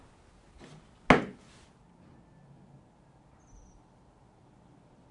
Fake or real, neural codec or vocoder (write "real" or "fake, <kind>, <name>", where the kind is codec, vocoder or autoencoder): real